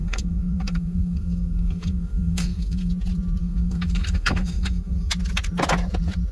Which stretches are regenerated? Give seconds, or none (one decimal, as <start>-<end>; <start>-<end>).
0.0-2.9; 3.4-5.1